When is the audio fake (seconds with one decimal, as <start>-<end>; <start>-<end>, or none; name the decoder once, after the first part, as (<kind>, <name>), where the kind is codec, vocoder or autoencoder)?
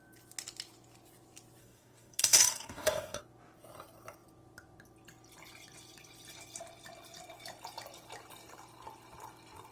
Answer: 1.6-3.2 (codec, DAC)